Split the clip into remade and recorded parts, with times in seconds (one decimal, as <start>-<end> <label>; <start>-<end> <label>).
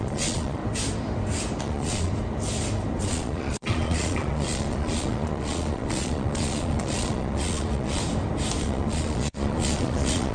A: 0.0-0.6 remade; 0.6-1.6 recorded; 1.6-2.1 remade; 2.1-3.0 recorded; 3.0-8.0 remade; 8.0-8.6 recorded; 8.6-10.3 remade